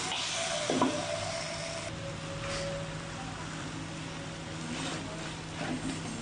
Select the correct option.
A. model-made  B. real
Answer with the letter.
B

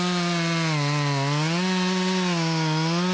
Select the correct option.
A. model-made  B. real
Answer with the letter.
B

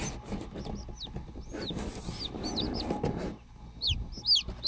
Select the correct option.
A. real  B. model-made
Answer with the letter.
A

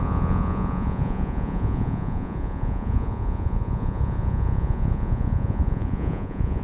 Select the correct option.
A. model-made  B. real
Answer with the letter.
A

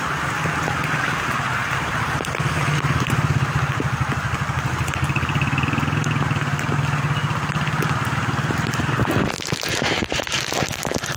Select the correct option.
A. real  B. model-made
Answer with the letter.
A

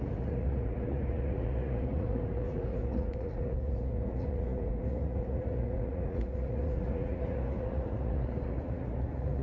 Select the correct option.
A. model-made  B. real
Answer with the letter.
A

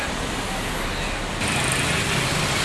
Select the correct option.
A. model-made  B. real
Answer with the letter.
B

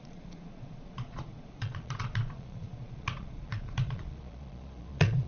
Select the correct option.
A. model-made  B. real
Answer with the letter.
A